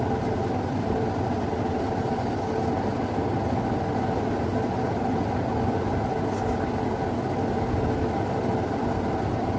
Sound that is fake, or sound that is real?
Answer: real